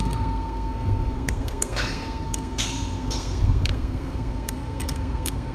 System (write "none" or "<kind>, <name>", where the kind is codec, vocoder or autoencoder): codec, SNAC